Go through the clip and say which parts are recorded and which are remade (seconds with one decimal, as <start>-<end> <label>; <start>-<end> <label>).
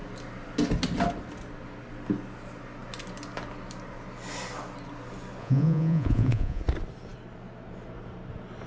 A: 0.0-5.4 recorded; 5.4-6.6 remade; 6.6-8.7 recorded